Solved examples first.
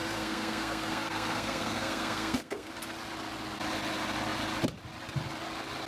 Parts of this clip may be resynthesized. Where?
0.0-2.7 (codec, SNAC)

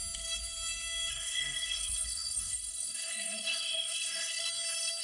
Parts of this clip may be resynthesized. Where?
1.1-4.4 (codec, SNAC)

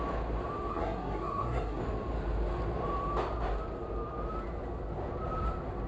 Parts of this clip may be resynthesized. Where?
0.7-1.8 (codec, SNAC)

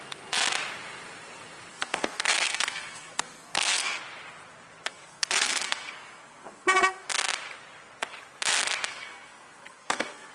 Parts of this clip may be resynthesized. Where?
1.7-4.0 (codec, SNAC); 4.9-7.1; 8.9-10.3

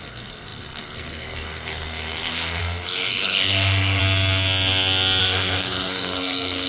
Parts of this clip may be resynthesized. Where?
0.0-4.0 (codec, SNAC); 5.2-6.7

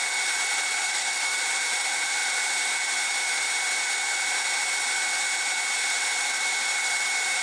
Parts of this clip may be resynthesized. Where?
0.8-1.4 (codec, SNAC)

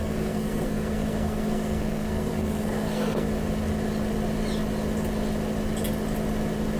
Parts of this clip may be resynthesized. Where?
0.0-3.3 (codec, SNAC)